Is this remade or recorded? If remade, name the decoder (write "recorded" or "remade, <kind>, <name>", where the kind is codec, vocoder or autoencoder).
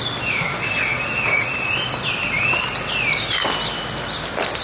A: recorded